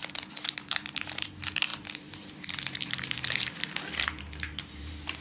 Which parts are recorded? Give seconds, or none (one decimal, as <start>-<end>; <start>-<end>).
none